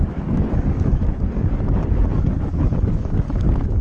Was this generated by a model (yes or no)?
yes